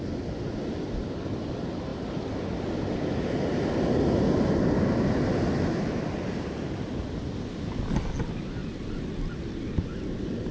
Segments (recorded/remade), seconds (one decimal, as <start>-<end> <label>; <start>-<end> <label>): 0.0-10.5 recorded